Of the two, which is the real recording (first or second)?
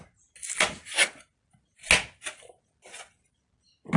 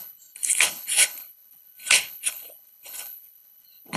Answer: first